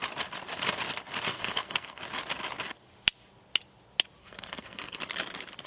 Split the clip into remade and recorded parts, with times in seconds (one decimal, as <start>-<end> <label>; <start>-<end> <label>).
0.0-1.3 recorded; 1.3-2.0 remade; 2.0-4.2 recorded; 4.2-5.0 remade; 5.0-5.7 recorded